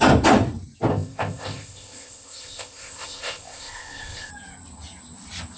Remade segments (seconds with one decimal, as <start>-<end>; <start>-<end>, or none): 0.9-4.3